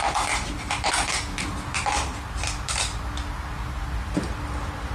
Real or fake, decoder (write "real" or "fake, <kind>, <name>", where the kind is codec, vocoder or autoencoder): real